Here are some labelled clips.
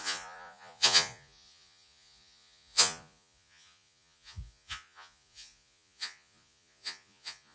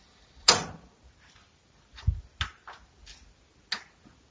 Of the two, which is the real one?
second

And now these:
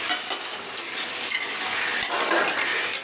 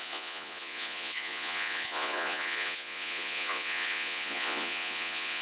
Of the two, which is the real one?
first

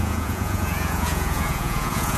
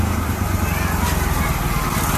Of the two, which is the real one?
second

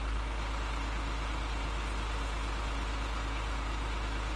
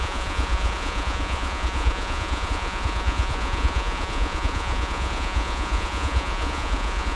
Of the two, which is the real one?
first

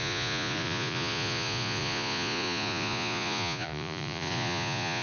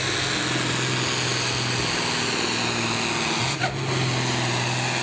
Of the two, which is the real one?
second